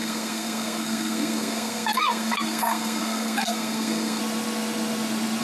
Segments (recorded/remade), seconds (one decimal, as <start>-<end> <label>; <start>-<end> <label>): 0.0-4.2 remade; 4.2-5.4 recorded